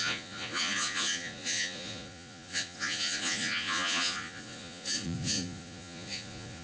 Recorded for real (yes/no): no